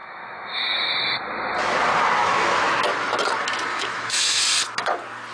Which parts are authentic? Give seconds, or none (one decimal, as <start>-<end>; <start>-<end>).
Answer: 0.9-2.2; 2.7-3.7; 4.4-5.3